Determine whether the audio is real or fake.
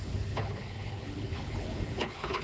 fake